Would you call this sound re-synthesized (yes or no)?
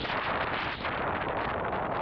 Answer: no